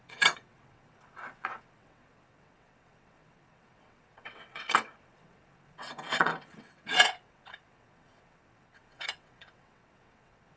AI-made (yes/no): yes